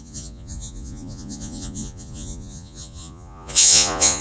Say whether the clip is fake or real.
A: fake